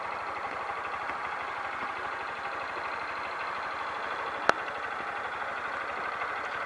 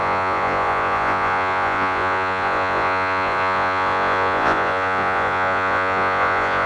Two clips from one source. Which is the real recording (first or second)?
first